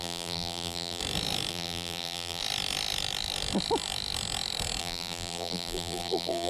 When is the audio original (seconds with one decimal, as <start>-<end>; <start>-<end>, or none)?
1.0-1.5; 2.4-4.8